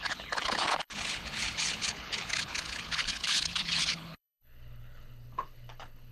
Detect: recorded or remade remade